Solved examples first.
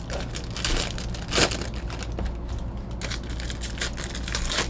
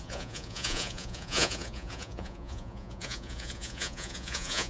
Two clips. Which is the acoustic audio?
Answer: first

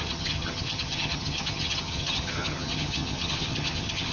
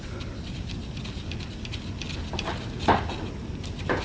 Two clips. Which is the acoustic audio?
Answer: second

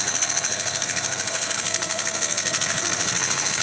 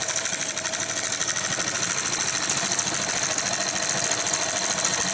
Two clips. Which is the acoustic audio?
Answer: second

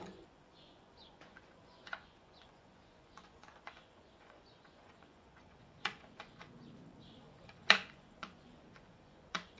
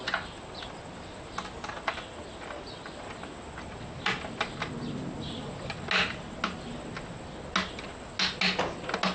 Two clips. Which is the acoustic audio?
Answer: second